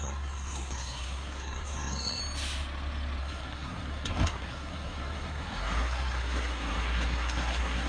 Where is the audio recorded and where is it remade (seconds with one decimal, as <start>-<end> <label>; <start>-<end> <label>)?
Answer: 0.0-2.2 remade; 2.2-3.2 recorded; 3.2-7.9 remade